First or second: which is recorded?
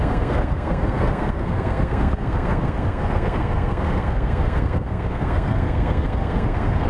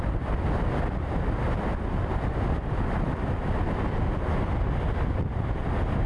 second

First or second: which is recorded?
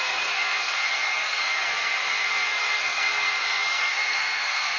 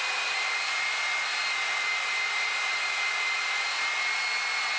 second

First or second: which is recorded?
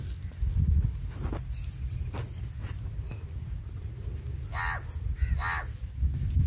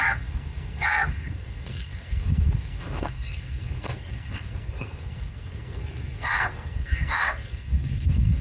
first